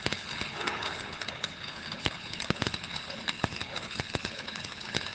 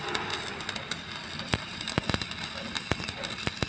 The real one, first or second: second